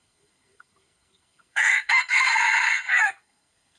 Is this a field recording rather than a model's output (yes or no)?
no